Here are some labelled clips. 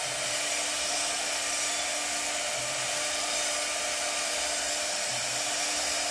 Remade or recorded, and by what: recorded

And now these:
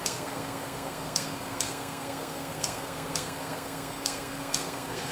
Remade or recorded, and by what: remade, codec, SNAC